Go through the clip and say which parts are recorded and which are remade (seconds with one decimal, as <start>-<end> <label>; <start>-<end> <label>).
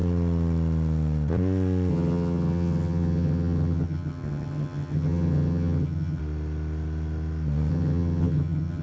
0.0-1.9 recorded; 1.9-6.2 remade; 6.2-7.7 recorded; 7.7-8.8 remade